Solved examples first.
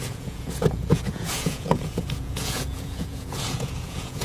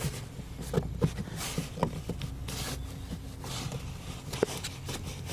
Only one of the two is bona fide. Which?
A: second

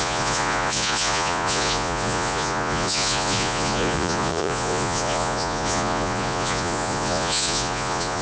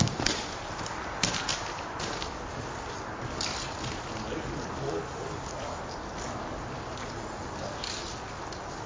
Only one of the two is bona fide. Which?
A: second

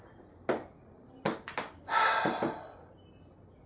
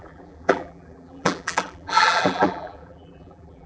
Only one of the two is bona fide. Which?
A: first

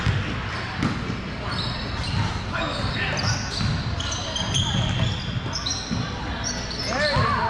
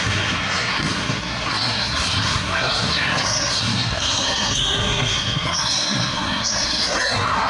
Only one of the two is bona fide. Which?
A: first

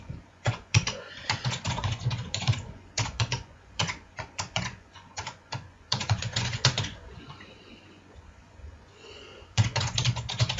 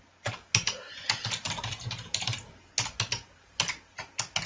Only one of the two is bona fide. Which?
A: second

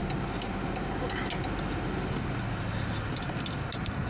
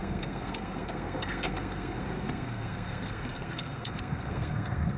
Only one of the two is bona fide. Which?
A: first